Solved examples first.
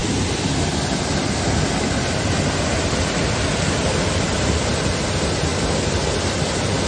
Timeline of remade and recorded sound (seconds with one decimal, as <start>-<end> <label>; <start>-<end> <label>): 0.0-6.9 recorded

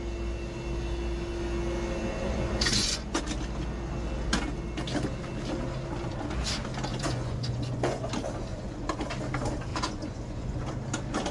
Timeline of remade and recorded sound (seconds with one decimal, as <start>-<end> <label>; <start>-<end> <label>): 0.0-2.0 recorded; 2.0-3.2 remade; 3.2-6.9 recorded; 6.9-8.1 remade; 8.1-8.5 recorded; 8.5-9.1 remade; 9.1-9.7 recorded; 9.7-10.7 remade; 10.7-11.3 recorded

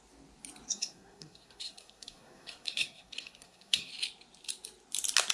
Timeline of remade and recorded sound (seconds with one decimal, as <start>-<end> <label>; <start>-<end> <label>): 0.0-0.7 recorded; 0.7-3.9 remade; 3.9-5.3 recorded

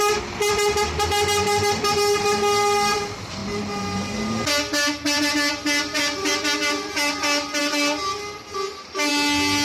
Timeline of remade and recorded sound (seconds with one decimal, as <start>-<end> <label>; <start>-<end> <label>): 0.0-9.6 recorded